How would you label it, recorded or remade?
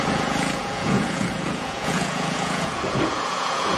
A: remade